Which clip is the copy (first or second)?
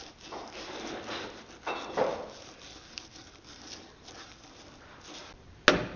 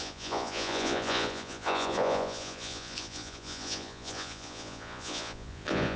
second